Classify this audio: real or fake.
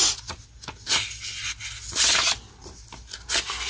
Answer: real